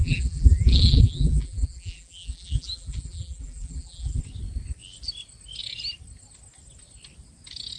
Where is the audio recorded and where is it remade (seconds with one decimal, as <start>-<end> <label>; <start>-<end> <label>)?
0.0-4.2 remade; 4.2-7.8 recorded